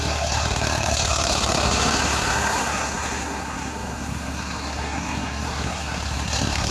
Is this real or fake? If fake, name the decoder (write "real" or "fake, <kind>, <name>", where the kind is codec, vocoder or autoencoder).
fake, codec, SNAC